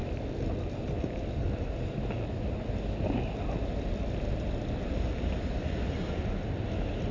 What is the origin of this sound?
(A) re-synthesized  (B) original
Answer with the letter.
B